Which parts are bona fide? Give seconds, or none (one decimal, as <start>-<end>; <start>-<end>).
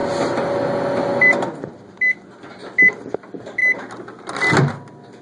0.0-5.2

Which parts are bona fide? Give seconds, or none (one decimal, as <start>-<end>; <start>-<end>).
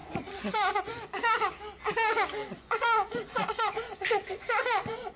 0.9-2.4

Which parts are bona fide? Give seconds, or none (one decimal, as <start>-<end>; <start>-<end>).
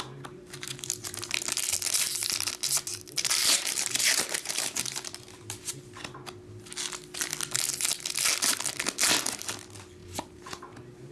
0.0-2.9; 5.7-10.0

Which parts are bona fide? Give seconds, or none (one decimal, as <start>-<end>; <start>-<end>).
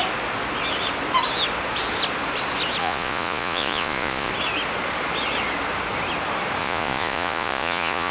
0.0-2.8; 4.3-6.6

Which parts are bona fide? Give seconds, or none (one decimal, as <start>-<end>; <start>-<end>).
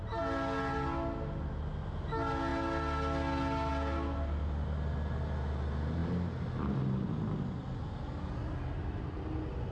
0.0-9.7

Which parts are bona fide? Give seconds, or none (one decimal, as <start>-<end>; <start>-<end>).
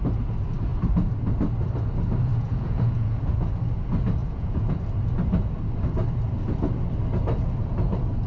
0.0-2.3; 3.2-4.2; 4.8-8.3